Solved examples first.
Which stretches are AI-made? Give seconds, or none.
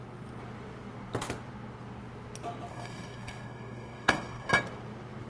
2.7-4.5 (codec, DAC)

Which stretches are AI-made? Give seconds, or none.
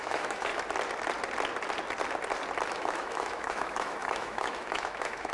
0.0-0.5 (autoencoder, DAC-VAE); 2.7-5.3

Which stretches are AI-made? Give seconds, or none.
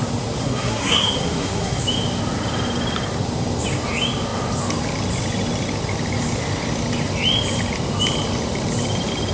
0.4-1.8 (codec, SNAC)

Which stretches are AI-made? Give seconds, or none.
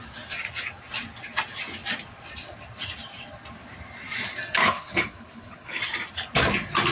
4.6-5.8 (codec, HILCodec)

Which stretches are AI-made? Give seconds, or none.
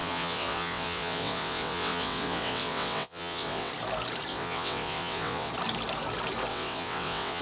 0.0-3.7 (vocoder, WaveNeXt); 4.3-5.5; 6.5-7.4